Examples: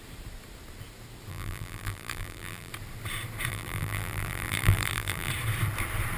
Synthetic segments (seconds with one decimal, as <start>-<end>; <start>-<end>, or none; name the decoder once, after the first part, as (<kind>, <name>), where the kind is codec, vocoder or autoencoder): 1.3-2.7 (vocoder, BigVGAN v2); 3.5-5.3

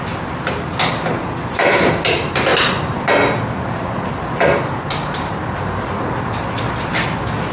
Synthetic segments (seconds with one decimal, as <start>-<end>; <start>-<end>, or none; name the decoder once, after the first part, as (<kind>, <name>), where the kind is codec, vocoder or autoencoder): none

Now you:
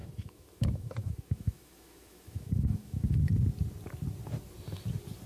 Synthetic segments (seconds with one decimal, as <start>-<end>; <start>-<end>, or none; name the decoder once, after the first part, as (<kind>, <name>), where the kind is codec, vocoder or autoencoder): 0.0-3.2 (autoencoder, DAC-VAE)